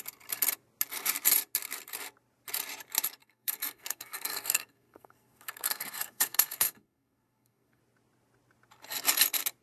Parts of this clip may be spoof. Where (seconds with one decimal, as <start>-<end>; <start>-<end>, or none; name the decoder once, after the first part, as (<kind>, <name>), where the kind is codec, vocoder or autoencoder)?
3.2-7.8 (codec, SNAC)